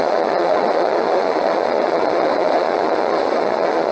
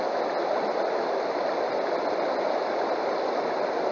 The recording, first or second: second